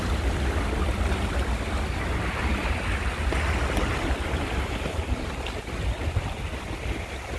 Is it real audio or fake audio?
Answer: real